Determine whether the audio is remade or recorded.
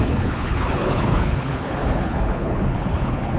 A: remade